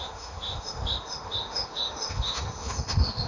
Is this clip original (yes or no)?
no